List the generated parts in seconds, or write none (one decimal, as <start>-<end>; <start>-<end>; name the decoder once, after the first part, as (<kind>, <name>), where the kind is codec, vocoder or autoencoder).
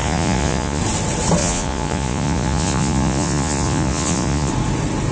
0.0-0.8 (vocoder, Vocos); 1.4-4.5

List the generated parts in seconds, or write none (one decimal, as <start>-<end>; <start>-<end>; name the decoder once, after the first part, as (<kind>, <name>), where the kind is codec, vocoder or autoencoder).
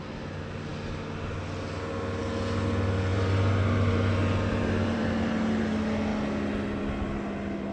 3.1-5.6 (vocoder, BigVGAN v2)